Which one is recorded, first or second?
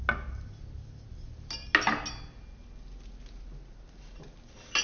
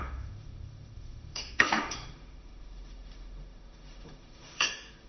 first